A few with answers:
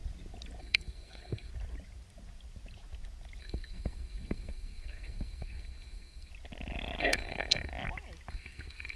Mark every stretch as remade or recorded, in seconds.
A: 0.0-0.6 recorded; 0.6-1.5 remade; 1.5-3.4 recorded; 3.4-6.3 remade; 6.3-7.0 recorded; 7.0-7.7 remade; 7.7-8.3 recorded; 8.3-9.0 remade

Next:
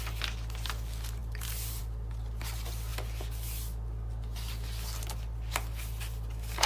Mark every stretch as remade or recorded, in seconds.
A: 0.0-6.7 recorded

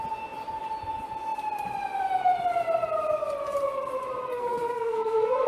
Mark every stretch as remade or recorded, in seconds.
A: 0.0-4.3 recorded; 4.3-5.5 remade

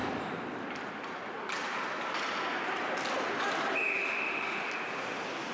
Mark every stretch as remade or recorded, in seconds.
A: 0.0-4.0 recorded; 4.0-4.7 remade; 4.7-5.5 recorded